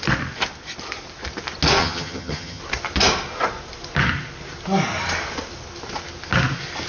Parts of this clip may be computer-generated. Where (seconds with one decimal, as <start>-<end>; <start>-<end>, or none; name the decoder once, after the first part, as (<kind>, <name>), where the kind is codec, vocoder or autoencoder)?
1.8-2.6 (vocoder, HiFi-GAN)